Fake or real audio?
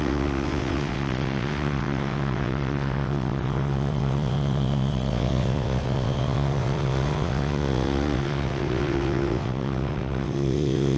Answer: fake